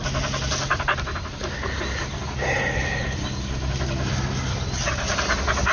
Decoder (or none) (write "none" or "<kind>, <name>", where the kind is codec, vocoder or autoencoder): none